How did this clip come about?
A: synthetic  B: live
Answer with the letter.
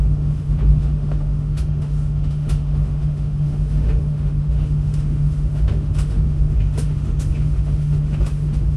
A